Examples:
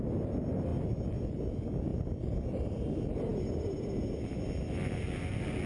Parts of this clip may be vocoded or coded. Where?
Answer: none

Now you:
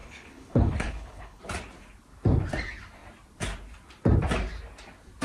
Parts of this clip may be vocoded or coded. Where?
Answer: 0.0-1.4 (codec, HILCodec)

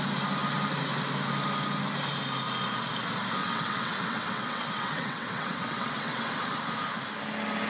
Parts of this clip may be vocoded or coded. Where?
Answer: 3.4-6.3 (vocoder, WaveNeXt)

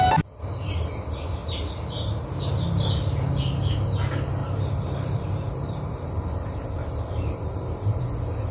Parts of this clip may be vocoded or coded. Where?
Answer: 4.4-8.0 (vocoder, BigVGAN v2)

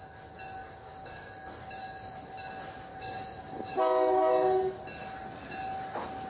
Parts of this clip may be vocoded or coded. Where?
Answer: 0.6-1.8 (codec, DAC); 2.9-4.3

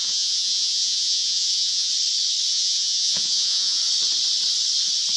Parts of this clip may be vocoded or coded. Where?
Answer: 0.0-1.9 (vocoder, Vocos); 2.5-3.8

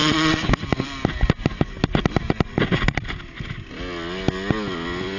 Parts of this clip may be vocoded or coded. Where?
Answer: 0.0-0.5 (vocoder, WaveNeXt)